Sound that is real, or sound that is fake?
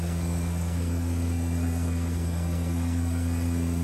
fake